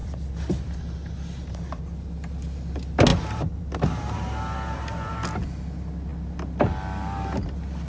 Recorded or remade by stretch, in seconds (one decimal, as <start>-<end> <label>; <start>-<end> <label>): 0.0-1.8 remade; 1.8-3.1 recorded; 3.1-5.1 remade; 5.1-7.9 recorded